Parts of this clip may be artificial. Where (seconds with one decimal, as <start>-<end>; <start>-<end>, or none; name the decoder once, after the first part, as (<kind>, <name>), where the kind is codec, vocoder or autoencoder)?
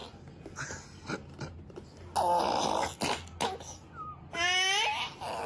none